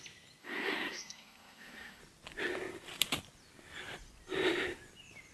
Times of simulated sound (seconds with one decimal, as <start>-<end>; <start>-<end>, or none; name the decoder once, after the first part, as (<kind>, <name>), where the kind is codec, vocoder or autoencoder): 0.4-2.0 (codec, SNAC)